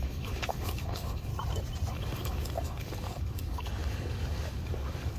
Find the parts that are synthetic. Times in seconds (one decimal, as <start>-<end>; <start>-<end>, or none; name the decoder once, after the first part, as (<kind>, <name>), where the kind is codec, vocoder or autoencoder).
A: 0.0-1.3 (codec, DAC); 1.9-5.2